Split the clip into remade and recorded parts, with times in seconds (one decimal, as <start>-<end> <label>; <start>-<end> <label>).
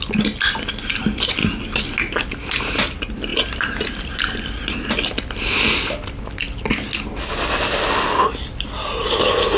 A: 0.0-9.6 recorded